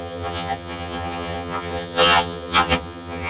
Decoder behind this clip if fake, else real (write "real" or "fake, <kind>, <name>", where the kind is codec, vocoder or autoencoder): fake, vocoder, HiFi-GAN